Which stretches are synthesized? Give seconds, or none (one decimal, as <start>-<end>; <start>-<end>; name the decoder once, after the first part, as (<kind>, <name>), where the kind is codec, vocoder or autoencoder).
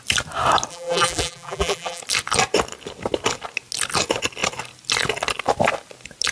0.7-2.0 (vocoder, BigVGAN v2)